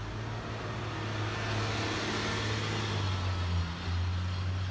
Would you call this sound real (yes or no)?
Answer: yes